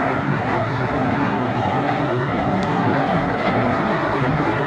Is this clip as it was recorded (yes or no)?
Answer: no